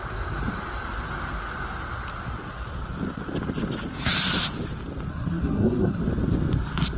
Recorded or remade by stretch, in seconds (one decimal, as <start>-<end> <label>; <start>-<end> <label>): 0.0-5.1 recorded; 5.1-6.0 remade; 6.0-7.0 recorded